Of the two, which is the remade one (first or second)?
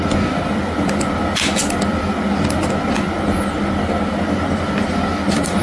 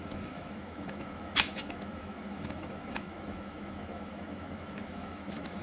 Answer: second